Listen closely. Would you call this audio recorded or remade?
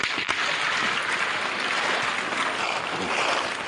recorded